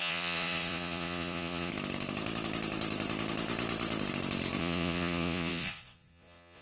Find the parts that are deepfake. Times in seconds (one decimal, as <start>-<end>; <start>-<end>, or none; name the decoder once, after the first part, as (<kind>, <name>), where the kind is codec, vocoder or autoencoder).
0.0-1.7 (vocoder, Vocos); 4.6-6.6